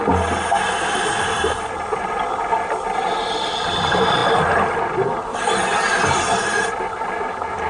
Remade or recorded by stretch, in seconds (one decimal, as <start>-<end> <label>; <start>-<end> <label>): 0.0-7.7 recorded